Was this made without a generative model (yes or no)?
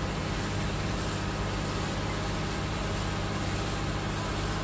yes